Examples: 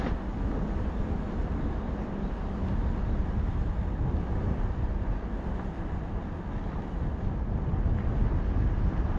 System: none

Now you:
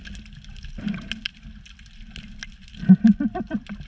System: none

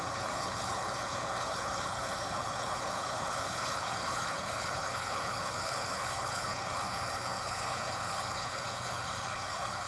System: codec, HILCodec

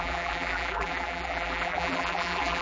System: vocoder, BigVGAN v2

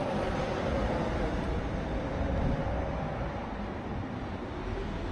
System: none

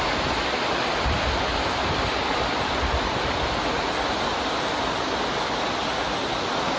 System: none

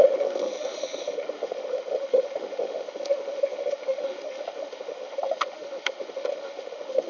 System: autoencoder, DAC-VAE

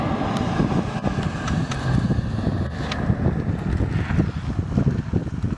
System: none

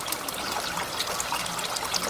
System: none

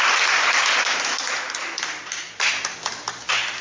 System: none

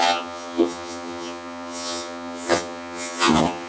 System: vocoder, HiFi-GAN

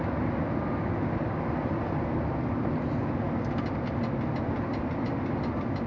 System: none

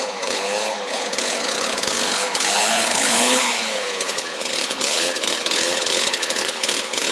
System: codec, HILCodec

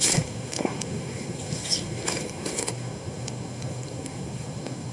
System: codec, SNAC